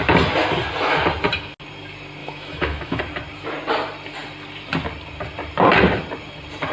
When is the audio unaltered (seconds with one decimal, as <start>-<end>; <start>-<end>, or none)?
0.0-2.2; 3.0-6.7